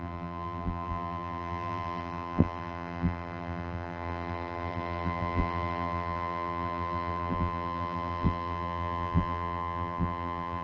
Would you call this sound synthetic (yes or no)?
yes